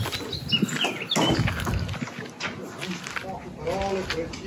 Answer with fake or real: real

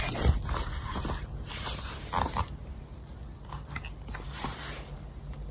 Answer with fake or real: real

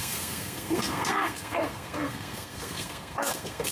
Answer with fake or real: fake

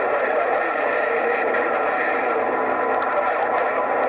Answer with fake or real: real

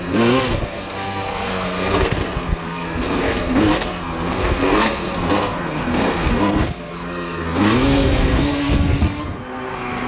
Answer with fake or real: fake